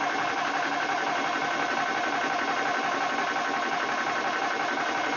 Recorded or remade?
recorded